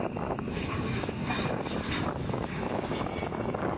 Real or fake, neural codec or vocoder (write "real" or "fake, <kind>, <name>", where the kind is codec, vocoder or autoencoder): fake, codec, DAC